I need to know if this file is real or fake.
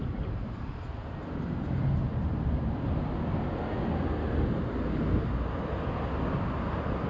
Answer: real